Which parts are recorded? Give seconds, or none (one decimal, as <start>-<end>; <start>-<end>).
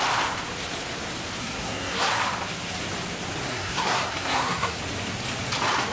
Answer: 0.0-1.4; 2.1-3.5; 4.8-5.9